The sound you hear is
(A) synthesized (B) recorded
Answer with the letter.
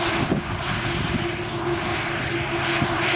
B